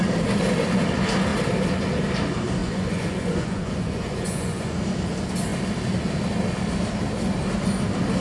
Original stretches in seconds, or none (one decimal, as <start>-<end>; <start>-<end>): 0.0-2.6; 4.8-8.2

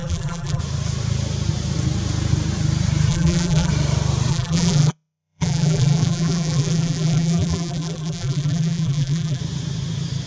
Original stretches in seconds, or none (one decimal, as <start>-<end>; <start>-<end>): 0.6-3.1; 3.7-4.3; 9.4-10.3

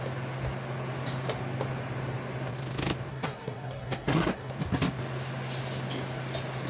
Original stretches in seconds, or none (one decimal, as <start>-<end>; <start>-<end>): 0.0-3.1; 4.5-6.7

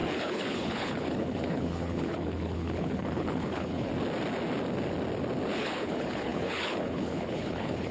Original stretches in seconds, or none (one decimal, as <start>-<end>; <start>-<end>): 3.9-5.6

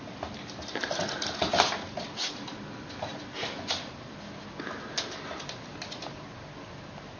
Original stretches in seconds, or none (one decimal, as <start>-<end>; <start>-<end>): 0.0-7.2

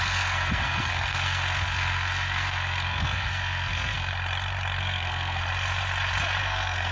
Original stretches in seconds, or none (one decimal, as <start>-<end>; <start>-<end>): 4.1-4.8; 5.4-6.4